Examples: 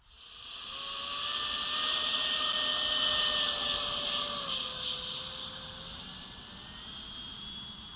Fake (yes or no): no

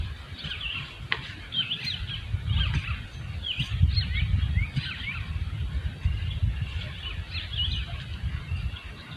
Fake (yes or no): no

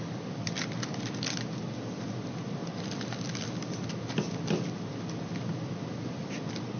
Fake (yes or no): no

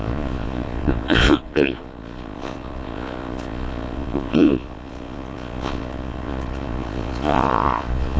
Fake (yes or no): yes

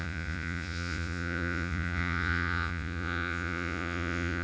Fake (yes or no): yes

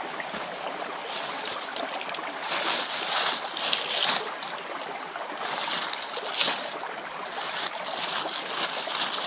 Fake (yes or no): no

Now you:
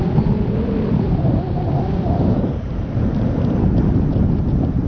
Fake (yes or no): no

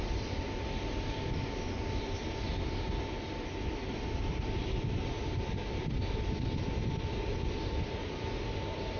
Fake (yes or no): no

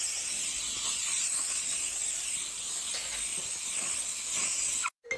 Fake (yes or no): no